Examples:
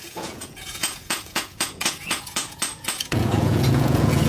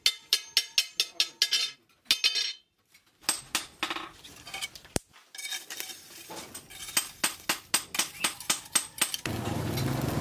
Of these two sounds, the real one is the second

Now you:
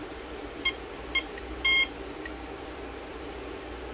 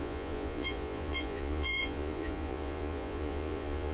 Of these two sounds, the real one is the first